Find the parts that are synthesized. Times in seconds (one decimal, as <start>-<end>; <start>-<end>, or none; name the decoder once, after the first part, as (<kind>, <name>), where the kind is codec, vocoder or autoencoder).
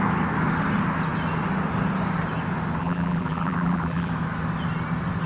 2.8-4.1 (vocoder, BigVGAN v2)